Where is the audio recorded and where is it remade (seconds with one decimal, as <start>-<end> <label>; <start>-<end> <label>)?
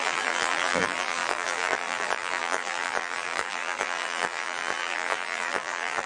0.0-6.1 remade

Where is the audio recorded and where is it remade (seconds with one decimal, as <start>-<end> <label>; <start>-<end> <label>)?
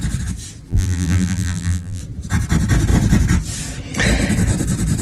0.0-0.7 recorded; 0.7-2.0 remade; 2.0-5.0 recorded